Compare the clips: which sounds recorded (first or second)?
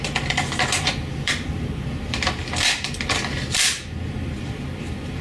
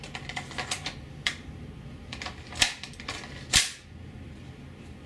second